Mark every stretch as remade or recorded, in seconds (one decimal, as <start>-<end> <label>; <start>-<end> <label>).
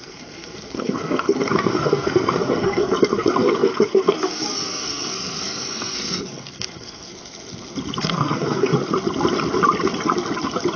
0.0-7.1 remade; 7.1-8.0 recorded; 8.0-8.7 remade; 8.7-10.8 recorded